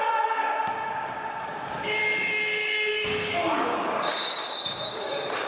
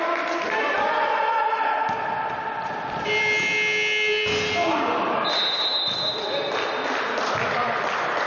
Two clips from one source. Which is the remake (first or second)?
first